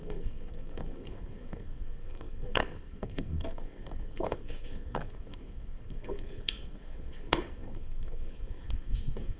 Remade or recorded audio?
remade